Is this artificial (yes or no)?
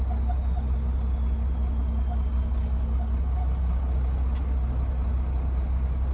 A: no